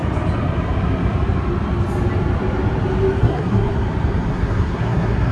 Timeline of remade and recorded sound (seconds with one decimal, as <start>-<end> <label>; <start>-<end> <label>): 0.0-3.2 recorded; 3.2-3.7 remade; 3.7-4.3 recorded; 4.3-5.3 remade